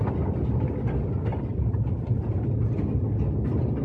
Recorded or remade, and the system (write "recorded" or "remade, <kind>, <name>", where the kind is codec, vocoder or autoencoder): recorded